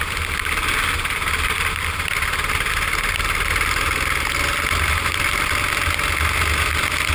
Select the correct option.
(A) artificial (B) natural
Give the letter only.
B